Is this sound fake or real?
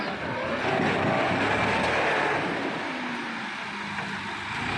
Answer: real